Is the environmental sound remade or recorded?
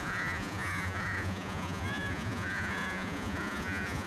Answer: remade